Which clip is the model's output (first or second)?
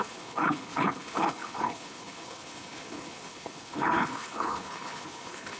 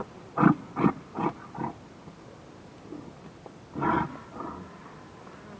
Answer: first